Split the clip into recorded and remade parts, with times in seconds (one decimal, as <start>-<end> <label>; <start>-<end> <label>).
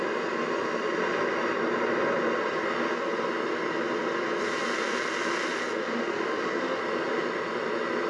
0.0-5.8 recorded; 5.8-6.8 remade; 6.8-8.1 recorded